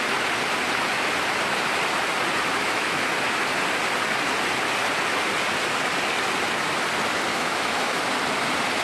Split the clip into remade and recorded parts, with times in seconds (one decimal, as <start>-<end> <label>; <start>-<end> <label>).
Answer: 0.0-2.5 recorded; 2.5-3.1 remade; 3.1-7.3 recorded; 7.3-8.0 remade; 8.0-8.8 recorded